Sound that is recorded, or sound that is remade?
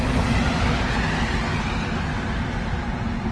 recorded